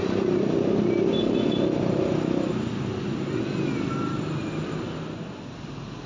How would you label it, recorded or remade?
recorded